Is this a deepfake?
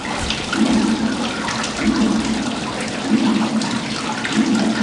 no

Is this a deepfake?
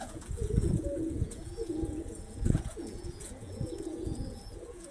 yes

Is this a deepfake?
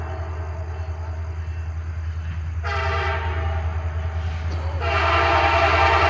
no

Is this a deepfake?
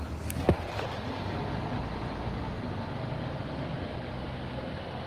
no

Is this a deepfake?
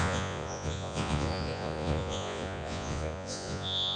yes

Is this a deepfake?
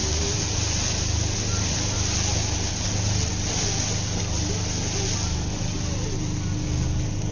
no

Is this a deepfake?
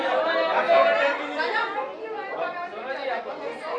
no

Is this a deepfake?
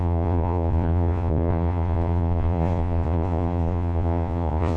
yes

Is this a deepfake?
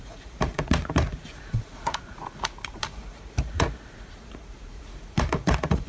yes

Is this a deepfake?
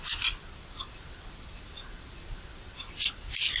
no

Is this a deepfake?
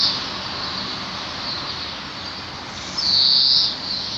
no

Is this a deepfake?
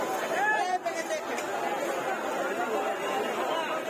no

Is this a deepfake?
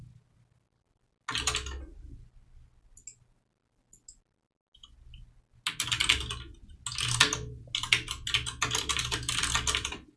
no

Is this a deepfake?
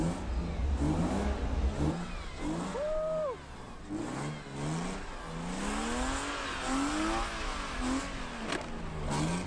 no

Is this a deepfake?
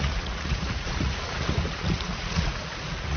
yes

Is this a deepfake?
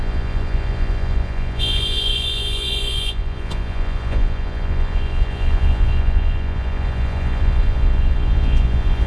yes